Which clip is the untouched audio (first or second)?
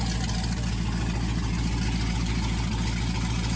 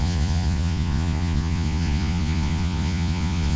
first